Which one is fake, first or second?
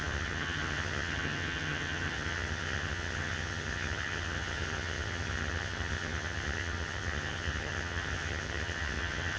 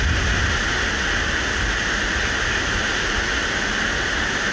first